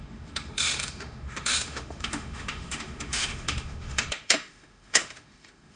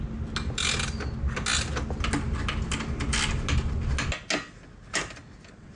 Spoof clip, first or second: first